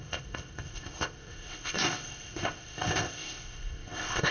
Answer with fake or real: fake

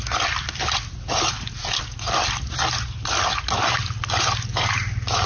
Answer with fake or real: real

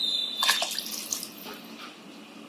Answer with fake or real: real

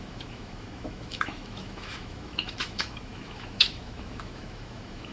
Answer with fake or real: fake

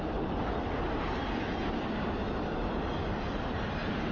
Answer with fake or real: real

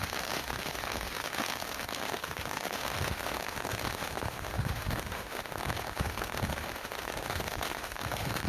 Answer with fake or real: fake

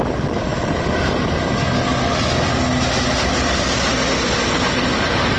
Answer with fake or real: real